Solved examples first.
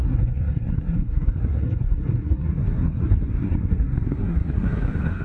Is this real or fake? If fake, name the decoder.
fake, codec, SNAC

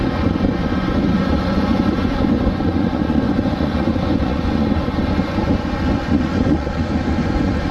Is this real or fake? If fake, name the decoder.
fake, vocoder, Vocos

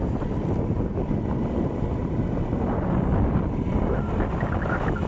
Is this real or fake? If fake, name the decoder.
real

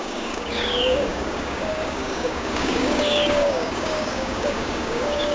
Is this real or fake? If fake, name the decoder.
fake, codec, DAC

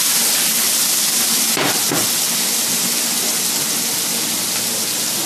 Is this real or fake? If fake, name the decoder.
real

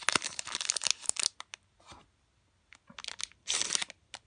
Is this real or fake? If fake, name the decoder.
real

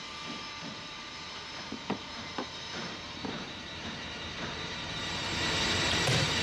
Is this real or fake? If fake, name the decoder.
fake, vocoder, BigVGAN v2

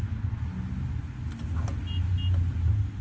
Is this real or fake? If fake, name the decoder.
real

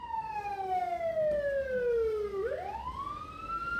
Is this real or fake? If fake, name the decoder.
real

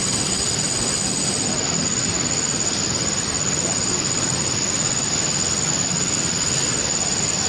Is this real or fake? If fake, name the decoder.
real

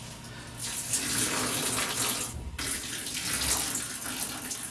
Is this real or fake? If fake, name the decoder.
real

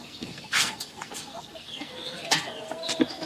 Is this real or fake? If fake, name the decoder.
fake, codec, SNAC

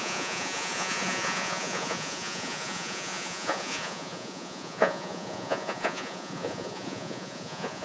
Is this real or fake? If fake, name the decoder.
fake, vocoder, Vocos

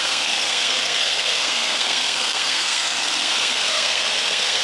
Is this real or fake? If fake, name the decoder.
fake, codec, SNAC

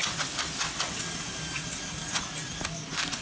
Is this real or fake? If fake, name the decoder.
real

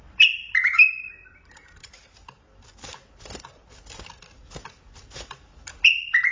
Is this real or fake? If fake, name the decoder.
fake, vocoder, BigVGAN v2